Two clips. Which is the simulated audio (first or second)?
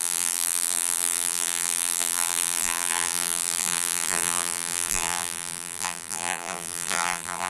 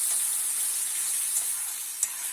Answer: first